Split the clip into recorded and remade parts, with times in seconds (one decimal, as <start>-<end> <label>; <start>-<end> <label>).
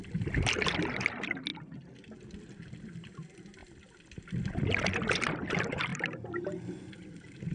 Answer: 0.0-7.5 recorded